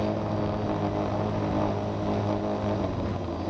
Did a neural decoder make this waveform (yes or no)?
no